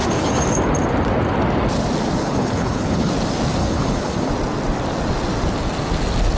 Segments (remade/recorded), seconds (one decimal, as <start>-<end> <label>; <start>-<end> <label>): 0.0-2.2 recorded; 2.2-3.1 remade; 3.1-3.6 recorded; 3.6-4.3 remade; 4.3-6.4 recorded